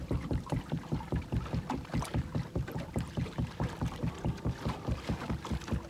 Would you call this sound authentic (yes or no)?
yes